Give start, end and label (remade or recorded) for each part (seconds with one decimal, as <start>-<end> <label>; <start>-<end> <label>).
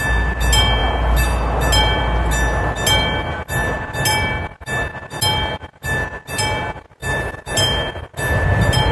0.0-8.9 recorded